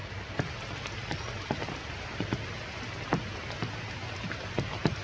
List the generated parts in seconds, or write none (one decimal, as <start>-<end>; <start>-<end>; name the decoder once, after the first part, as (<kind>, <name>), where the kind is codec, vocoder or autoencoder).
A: none